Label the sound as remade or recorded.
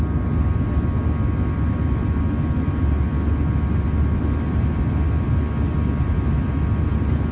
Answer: recorded